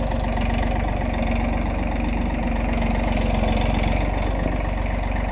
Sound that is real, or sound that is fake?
real